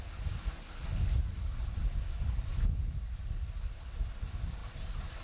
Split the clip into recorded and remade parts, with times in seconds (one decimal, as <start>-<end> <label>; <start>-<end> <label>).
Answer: 0.0-5.2 recorded